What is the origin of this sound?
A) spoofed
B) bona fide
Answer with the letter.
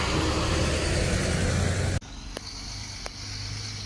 B